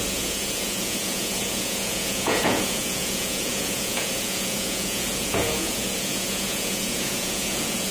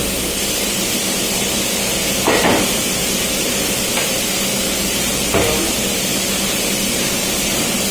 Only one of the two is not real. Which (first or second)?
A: first